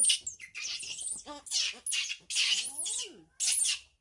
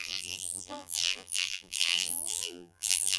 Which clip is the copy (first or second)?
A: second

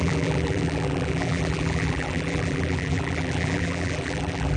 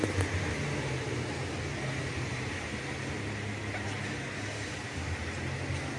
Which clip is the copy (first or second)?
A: first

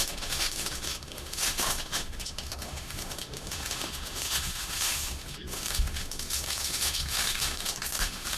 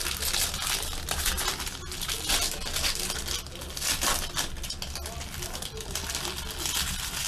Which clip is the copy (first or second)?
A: first